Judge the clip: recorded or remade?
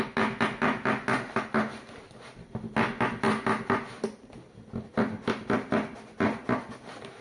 recorded